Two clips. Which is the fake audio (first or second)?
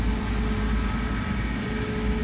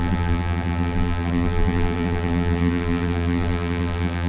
second